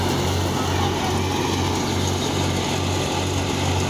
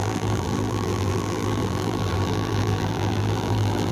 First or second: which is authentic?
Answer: first